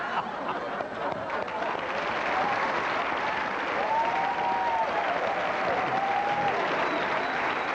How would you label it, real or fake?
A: real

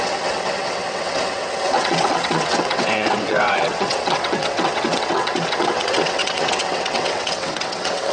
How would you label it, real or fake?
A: fake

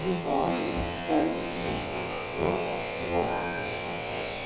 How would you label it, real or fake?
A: fake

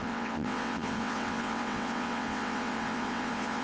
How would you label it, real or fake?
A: fake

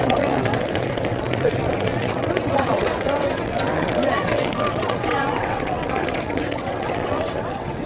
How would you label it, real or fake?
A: fake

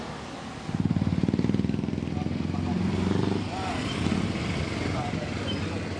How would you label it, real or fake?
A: real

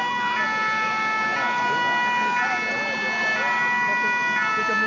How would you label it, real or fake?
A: real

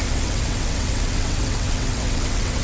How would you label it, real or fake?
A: fake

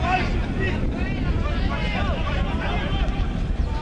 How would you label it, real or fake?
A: real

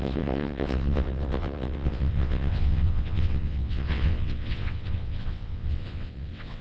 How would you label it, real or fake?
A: fake